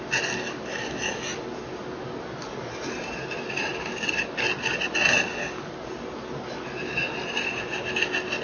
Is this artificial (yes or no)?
no